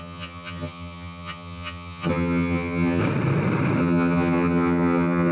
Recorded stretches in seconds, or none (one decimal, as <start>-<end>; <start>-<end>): 3.0-3.8